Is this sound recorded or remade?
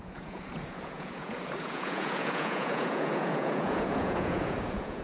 remade